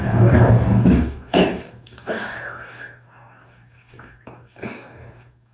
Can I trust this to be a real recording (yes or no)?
no